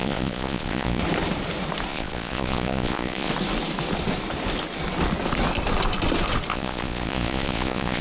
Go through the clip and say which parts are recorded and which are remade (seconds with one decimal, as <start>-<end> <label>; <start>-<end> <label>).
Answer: 0.0-1.0 remade; 1.0-1.9 recorded; 1.9-3.3 remade; 3.3-6.5 recorded; 6.5-8.0 remade